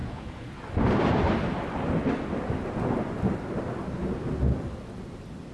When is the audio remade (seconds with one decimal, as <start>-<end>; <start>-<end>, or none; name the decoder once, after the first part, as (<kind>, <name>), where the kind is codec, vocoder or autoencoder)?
0.0-0.6 (vocoder, Vocos)